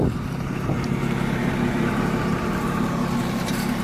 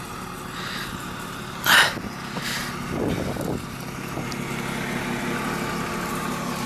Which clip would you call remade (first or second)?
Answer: first